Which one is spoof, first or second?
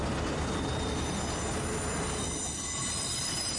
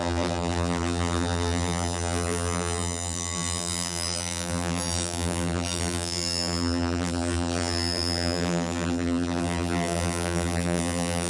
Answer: second